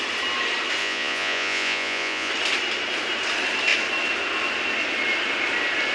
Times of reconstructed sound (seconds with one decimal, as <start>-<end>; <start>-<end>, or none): 0.8-2.3